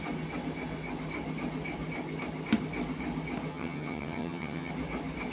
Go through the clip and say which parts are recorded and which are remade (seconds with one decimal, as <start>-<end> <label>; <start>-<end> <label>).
0.0-3.5 recorded; 3.5-4.7 remade; 4.7-5.3 recorded